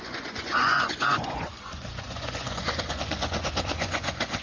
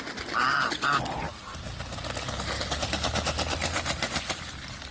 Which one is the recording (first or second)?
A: second